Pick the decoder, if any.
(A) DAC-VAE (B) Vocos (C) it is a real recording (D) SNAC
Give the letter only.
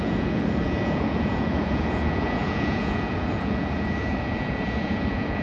B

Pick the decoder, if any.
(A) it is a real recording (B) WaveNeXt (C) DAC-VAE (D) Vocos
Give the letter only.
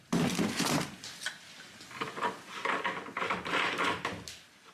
A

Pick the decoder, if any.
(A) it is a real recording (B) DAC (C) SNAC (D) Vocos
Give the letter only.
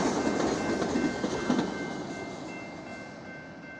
A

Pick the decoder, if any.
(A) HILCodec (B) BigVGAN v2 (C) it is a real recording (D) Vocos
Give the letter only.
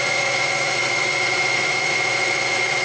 D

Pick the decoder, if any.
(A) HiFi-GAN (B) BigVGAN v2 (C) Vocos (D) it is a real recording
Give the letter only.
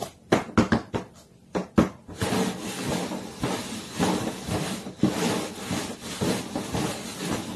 D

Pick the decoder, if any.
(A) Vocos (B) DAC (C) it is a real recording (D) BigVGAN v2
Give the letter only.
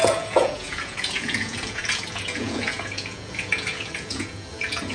A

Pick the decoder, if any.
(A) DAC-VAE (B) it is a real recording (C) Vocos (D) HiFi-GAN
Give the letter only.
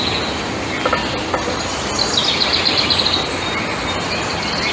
B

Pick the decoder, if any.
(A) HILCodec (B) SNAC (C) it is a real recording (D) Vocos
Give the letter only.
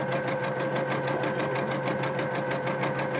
C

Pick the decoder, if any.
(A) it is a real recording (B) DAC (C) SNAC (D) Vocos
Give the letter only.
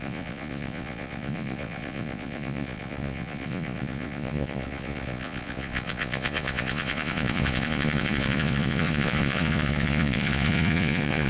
D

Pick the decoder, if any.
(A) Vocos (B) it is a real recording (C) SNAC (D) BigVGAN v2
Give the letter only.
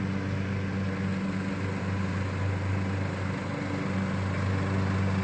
B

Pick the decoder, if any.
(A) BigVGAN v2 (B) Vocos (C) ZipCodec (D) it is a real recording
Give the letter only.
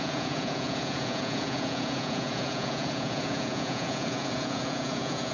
B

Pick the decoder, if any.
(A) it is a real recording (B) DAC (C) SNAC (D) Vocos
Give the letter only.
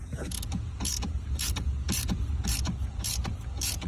D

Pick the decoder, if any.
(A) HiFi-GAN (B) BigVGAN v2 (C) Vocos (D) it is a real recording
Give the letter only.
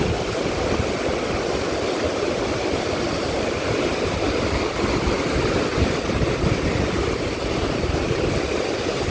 D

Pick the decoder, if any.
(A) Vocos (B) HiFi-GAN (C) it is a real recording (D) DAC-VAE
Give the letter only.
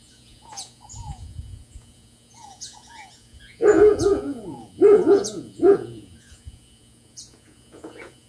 A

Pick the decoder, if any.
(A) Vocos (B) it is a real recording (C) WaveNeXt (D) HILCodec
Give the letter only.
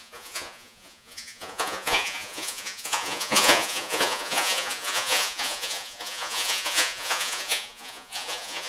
A